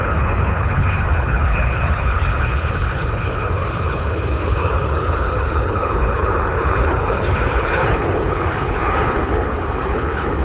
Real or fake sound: fake